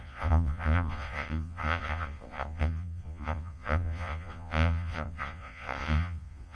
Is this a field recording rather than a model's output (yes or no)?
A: no